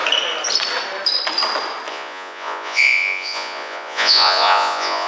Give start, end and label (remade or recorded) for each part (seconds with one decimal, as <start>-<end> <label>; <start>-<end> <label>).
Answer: 0.0-1.9 recorded; 1.9-5.1 remade